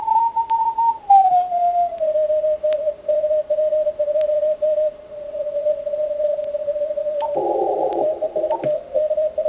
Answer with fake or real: fake